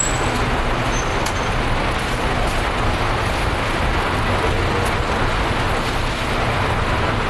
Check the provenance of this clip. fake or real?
real